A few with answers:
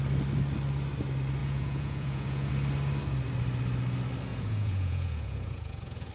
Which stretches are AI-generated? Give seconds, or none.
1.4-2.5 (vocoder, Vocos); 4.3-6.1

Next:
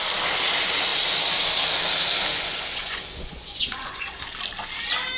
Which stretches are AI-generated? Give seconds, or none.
2.3-4.2 (vocoder, Vocos)